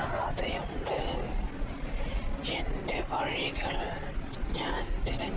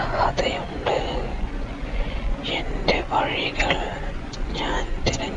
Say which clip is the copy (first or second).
second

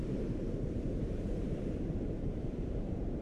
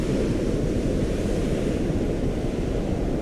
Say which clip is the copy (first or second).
first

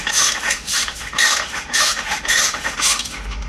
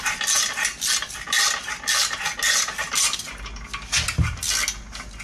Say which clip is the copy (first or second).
first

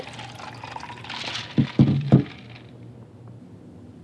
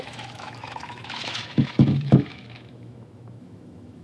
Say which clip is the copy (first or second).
second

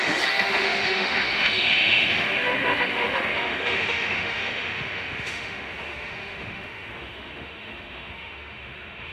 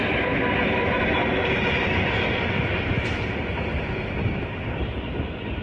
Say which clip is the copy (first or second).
first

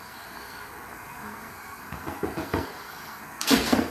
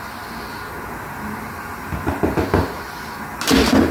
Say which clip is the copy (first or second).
first